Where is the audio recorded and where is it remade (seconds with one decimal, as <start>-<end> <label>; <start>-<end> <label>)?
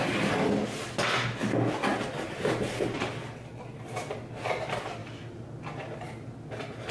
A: 0.0-6.9 recorded